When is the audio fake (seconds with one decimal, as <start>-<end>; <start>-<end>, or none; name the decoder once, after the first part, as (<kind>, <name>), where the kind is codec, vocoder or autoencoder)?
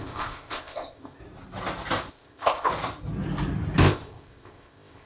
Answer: 0.0-1.2 (codec, ZipCodec); 2.1-2.7; 3.8-5.1